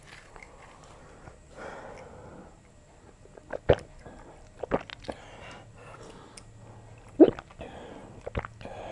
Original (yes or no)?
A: yes